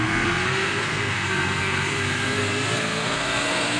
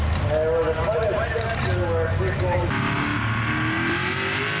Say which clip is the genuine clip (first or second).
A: second